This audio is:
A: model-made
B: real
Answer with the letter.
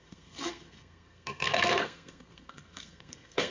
A